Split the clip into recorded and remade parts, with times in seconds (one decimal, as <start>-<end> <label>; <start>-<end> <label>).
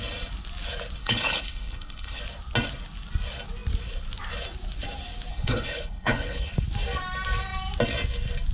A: 0.0-1.0 recorded; 1.0-2.2 remade; 2.2-5.3 recorded; 5.3-6.5 remade; 6.5-8.5 recorded